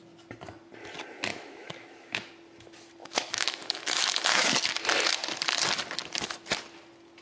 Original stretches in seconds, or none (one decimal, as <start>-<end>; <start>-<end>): 0.0-1.3; 2.3-3.0; 4.6-7.2